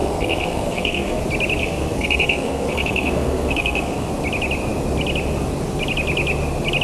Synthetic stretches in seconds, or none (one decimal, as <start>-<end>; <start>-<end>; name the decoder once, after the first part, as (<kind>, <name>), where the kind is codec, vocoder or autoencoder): 0.0-1.2 (codec, SNAC); 1.6-4.1